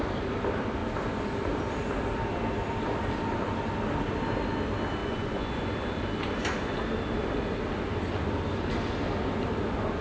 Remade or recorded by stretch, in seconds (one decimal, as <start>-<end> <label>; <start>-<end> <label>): 0.0-5.0 recorded; 5.0-5.7 remade; 5.7-10.0 recorded